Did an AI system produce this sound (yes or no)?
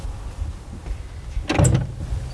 no